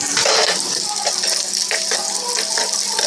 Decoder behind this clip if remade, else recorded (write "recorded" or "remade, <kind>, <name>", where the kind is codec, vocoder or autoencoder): recorded